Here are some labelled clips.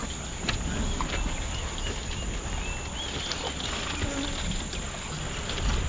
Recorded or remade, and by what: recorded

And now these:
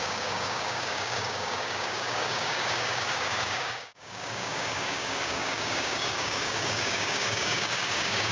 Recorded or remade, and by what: remade, codec, DAC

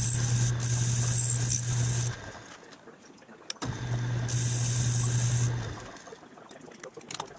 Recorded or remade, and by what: recorded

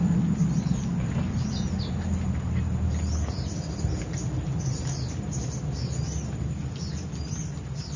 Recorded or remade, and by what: recorded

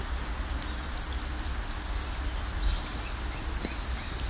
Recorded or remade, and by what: recorded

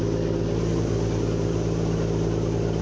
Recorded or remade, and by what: recorded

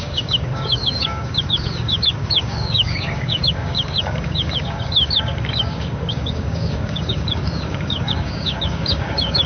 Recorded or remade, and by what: remade, codec, DAC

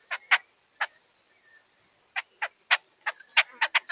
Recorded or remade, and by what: recorded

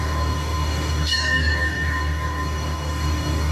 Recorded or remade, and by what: remade, codec, DAC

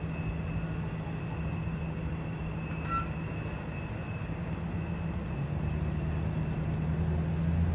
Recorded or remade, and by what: recorded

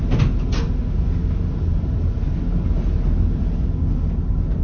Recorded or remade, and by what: recorded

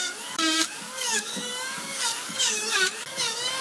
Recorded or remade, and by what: remade, codec, DAC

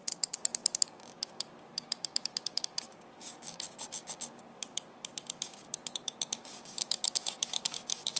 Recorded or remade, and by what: remade, codec, DAC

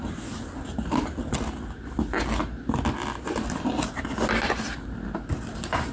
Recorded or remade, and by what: recorded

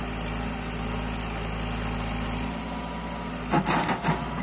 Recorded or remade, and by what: recorded